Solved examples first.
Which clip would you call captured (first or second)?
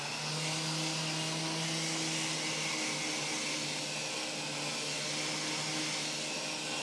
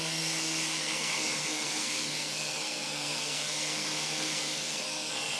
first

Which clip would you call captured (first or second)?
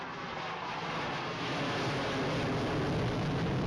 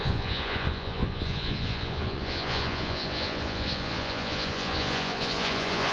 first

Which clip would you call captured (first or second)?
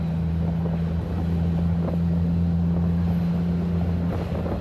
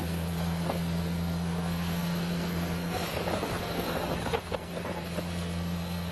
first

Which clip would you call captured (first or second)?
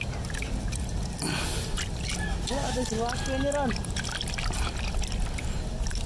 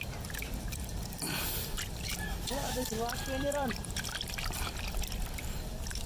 first